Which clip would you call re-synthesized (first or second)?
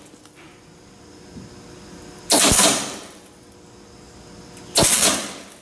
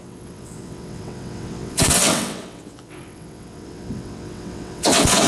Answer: second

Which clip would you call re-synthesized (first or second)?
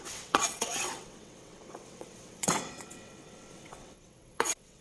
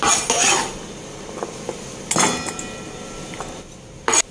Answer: first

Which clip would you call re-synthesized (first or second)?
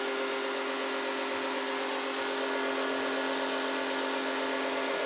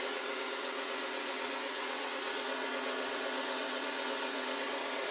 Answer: second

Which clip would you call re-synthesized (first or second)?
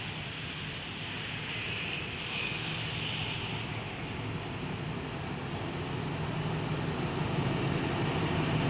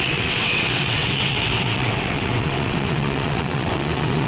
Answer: second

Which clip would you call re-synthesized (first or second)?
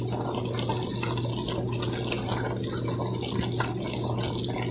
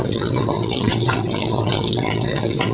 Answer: second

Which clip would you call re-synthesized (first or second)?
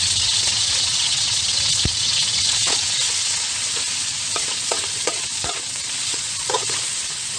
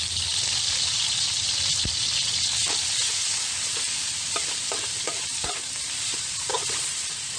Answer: first